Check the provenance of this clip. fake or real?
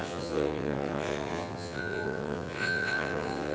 fake